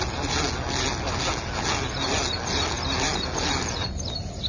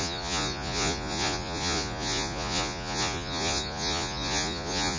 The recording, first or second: first